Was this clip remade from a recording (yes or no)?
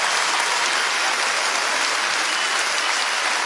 no